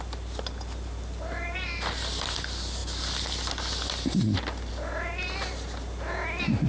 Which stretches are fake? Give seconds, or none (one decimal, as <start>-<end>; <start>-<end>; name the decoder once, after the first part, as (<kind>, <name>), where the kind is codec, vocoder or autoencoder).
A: none

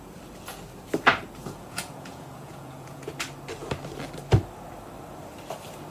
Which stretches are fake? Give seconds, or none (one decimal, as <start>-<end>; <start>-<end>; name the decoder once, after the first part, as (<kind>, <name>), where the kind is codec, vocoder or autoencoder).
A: 1.4-3.1 (vocoder, Vocos)

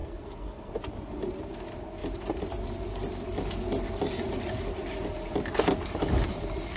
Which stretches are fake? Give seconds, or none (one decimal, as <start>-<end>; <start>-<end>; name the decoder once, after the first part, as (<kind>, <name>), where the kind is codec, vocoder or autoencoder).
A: 0.0-0.7 (codec, SNAC)

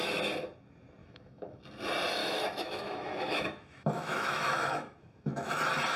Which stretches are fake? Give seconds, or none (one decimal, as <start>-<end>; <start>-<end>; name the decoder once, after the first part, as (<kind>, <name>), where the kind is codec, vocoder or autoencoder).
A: 1.0-1.6 (autoencoder, DAC-VAE); 2.2-5.5

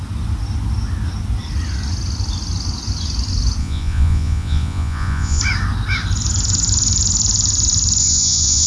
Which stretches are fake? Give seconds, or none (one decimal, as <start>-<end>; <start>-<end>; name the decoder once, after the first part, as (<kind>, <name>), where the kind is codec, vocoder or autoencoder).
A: 3.6-5.4 (vocoder, Vocos); 8.0-8.7

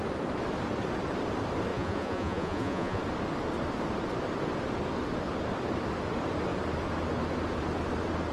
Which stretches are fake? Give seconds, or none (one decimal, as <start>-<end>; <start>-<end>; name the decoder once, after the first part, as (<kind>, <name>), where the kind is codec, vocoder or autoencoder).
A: 1.7-3.0 (vocoder, Vocos)

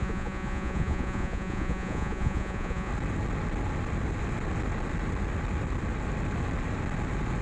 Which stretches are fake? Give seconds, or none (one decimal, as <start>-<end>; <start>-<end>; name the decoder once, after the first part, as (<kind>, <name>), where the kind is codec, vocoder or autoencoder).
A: 0.0-2.9 (vocoder, Vocos)

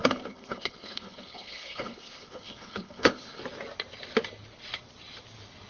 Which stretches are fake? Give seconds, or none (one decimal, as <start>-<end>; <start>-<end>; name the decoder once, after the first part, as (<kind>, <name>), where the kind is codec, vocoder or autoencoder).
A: 0.0-3.4 (codec, HILCodec)